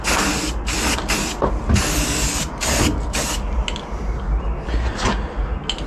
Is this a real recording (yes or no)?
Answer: yes